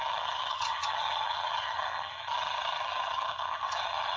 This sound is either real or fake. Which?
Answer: fake